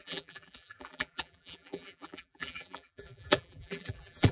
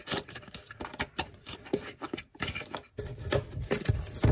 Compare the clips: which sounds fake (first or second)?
first